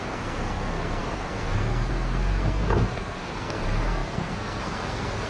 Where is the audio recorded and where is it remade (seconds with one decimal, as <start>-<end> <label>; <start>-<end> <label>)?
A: 0.0-5.3 remade